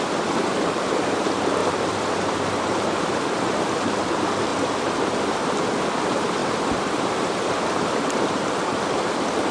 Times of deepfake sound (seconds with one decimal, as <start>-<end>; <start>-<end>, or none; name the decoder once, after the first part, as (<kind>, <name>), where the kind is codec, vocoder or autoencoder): 1.6-3.6 (vocoder, BigVGAN v2); 4.5-5.1; 6.4-8.8